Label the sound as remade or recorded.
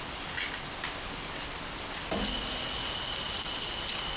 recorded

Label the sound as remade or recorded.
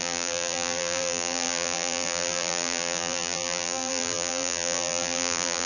remade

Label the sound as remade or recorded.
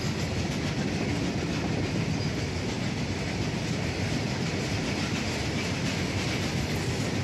recorded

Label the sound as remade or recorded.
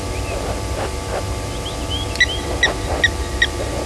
recorded